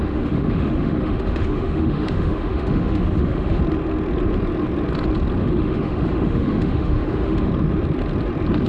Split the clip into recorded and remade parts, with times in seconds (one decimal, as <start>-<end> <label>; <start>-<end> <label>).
0.0-3.6 remade; 3.6-5.4 recorded; 5.4-7.5 remade; 7.5-8.7 recorded